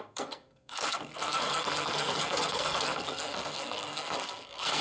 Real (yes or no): no